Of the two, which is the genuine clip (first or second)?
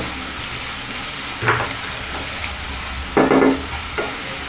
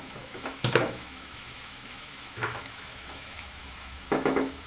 first